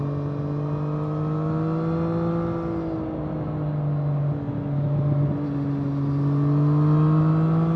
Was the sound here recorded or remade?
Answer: recorded